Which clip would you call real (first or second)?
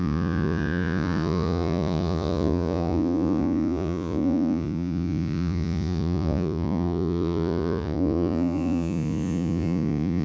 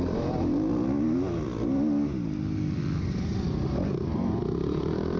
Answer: second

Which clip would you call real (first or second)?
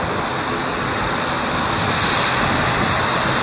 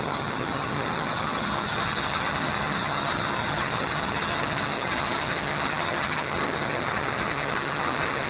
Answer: first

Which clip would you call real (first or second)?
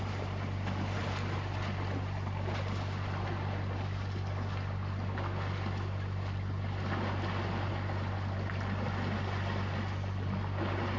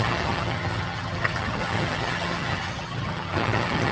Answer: first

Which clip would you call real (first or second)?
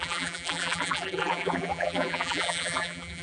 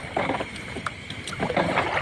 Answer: second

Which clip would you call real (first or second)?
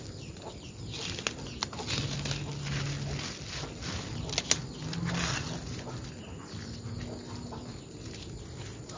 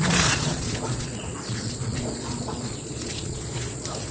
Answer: first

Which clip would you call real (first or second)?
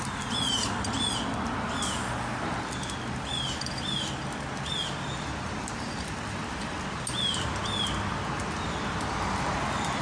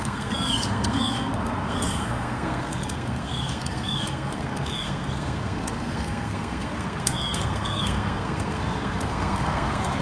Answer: first